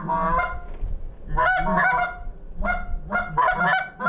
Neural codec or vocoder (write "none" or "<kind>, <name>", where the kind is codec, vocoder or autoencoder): none